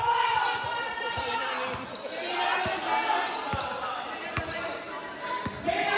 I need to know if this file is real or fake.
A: real